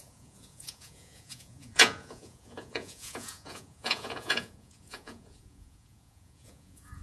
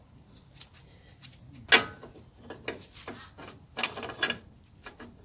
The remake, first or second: first